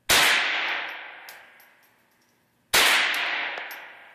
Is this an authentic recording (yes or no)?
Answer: yes